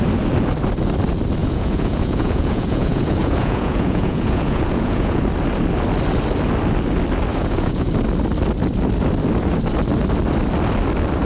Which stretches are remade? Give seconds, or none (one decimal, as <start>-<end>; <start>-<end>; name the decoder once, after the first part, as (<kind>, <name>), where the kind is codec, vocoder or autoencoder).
1.4-5.2 (vocoder, Vocos); 7.3-7.9